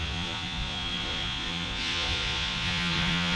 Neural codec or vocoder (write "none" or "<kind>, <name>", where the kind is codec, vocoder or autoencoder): vocoder, Vocos